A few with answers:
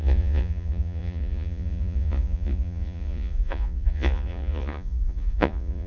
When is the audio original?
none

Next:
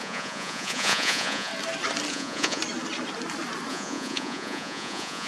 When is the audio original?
1.5-2.1; 2.6-3.7

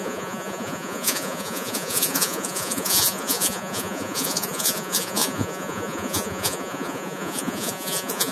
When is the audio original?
none